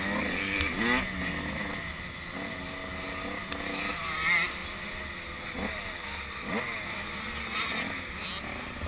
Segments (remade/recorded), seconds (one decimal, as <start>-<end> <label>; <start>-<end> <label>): 0.0-8.9 recorded